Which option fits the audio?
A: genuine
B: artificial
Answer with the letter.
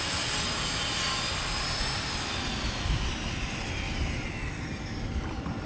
A